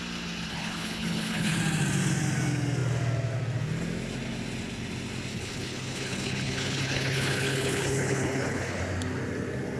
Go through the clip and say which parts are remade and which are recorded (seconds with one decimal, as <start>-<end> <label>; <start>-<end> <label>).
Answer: 0.0-0.5 recorded; 0.5-1.6 remade; 1.6-5.3 recorded; 5.3-8.8 remade; 8.8-9.8 recorded